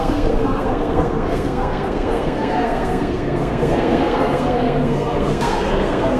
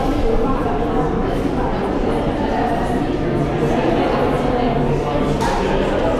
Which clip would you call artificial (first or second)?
first